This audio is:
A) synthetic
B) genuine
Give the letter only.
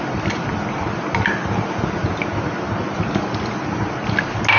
B